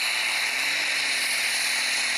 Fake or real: real